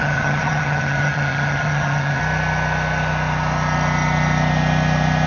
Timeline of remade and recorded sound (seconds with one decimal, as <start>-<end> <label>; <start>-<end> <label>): 0.0-2.2 remade; 2.2-5.3 recorded